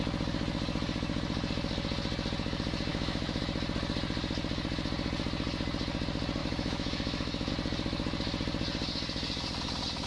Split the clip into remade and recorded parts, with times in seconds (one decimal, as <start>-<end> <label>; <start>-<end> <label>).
0.0-2.9 recorded; 2.9-3.4 remade; 3.4-6.4 recorded; 6.4-7.5 remade; 7.5-10.1 recorded